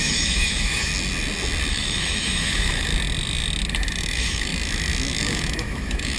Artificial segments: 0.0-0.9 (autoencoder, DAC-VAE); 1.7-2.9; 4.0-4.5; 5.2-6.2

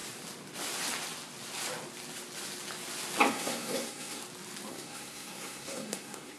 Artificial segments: 3.3-4.2 (codec, SNAC); 4.7-6.4

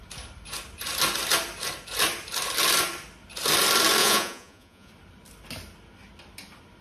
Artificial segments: 4.0-4.9 (vocoder, Vocos)

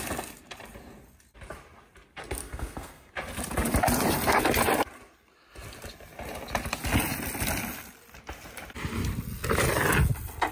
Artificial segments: 2.4-3.1 (codec, SNAC)

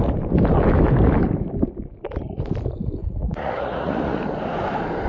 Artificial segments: 3.0-4.2 (vocoder, Vocos)

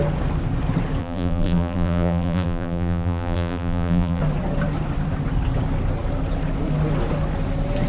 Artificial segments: 1.0-4.2 (vocoder, BigVGAN v2)

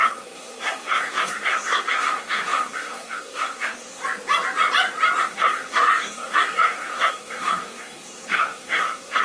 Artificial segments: 0.0-4.0 (codec, SNAC); 5.2-9.2

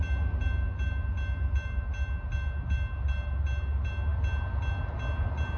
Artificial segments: none